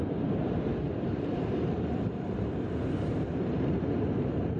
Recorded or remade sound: remade